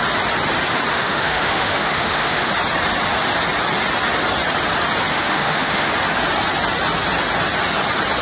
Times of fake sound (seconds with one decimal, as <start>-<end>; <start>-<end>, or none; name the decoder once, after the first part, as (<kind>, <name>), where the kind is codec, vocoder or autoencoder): 0.9-2.5 (autoencoder, DAC-VAE); 5.1-5.9